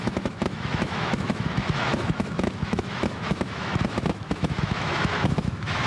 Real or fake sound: fake